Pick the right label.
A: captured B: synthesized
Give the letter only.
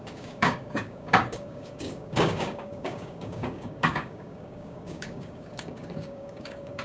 B